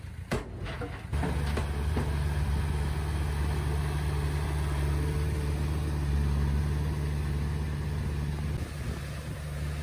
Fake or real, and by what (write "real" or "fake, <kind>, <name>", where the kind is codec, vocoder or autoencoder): real